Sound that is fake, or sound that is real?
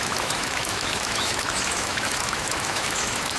fake